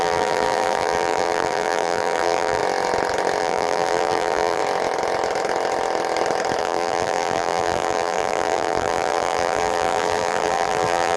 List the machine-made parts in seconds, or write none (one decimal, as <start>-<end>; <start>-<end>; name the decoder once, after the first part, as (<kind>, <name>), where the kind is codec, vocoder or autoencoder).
0.0-2.6 (vocoder, BigVGAN v2); 3.4-4.6; 6.6-11.2